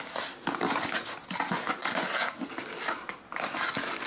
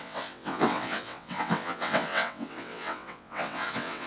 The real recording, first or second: first